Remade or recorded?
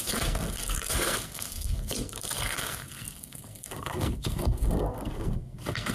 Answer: remade